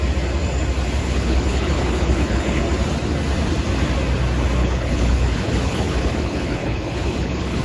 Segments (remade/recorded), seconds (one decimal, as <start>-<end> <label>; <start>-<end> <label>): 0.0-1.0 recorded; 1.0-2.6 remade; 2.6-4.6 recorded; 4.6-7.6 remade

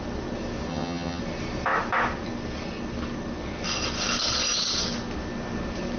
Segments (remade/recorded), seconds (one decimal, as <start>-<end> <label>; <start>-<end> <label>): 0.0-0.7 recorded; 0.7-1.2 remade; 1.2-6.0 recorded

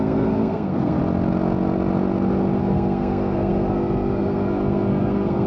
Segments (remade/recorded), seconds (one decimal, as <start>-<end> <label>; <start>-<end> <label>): 0.0-1.0 remade; 1.0-2.6 recorded; 2.6-5.5 remade

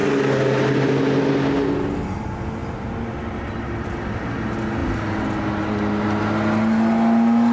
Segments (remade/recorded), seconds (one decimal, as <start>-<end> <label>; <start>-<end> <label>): 0.0-2.6 recorded; 2.6-4.0 remade; 4.0-7.5 recorded

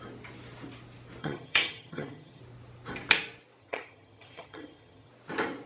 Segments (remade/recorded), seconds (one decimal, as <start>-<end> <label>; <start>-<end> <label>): 0.0-1.2 recorded; 1.2-2.4 remade; 2.4-3.6 recorded; 3.6-5.1 remade; 5.1-5.7 recorded